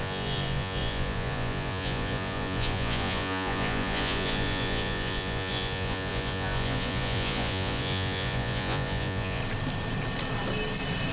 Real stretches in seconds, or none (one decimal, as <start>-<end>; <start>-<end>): 9.4-11.1